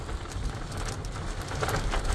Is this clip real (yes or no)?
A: yes